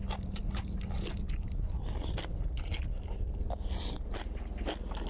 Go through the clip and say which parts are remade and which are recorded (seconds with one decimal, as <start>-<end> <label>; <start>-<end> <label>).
0.0-5.1 recorded